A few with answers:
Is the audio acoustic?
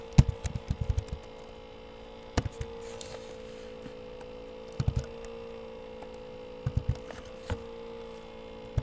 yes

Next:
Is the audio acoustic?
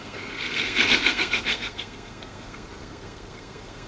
no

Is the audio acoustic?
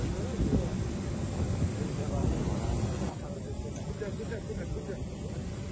yes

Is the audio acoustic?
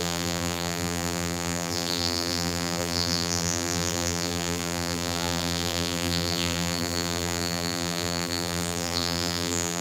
no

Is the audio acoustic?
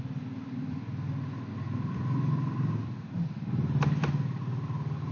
yes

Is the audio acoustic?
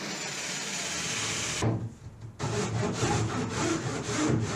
yes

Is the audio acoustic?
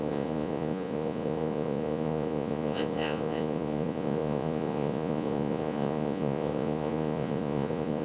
no